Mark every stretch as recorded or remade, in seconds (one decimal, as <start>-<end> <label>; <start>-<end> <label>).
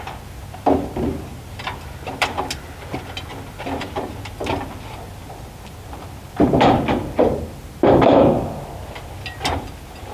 0.0-10.1 recorded